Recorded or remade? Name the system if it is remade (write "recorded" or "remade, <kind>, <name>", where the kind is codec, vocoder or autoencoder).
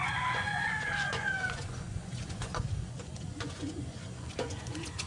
remade, vocoder, Vocos